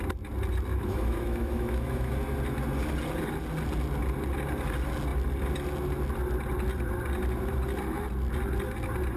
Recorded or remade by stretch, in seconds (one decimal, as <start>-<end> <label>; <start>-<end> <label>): 0.0-0.7 recorded; 0.7-2.1 remade; 2.1-9.2 recorded